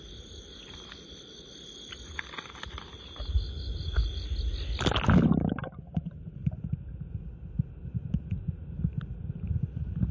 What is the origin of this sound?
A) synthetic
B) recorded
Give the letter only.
B